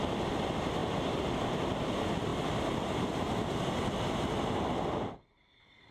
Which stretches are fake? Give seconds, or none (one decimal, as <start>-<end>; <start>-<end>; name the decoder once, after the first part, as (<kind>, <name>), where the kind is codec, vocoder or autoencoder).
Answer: none